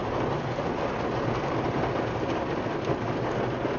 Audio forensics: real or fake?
real